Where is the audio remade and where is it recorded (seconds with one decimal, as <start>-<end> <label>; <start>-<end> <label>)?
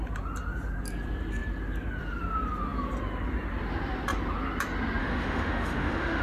0.0-5.0 recorded; 5.0-6.2 remade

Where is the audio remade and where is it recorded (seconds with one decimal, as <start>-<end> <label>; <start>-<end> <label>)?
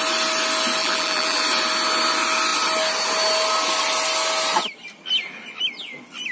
0.0-0.8 recorded; 0.8-1.4 remade; 1.4-6.3 recorded